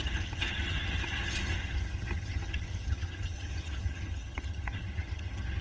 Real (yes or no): no